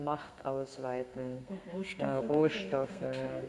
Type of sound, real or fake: fake